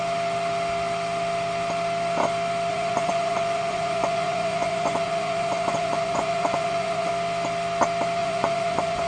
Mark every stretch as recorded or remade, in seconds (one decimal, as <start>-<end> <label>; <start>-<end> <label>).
0.0-2.7 recorded; 2.7-7.1 remade; 7.1-8.2 recorded; 8.2-9.1 remade